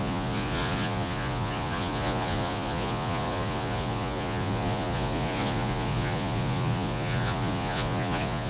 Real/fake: fake